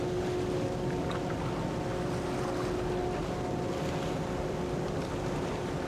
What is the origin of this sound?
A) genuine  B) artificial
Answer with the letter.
A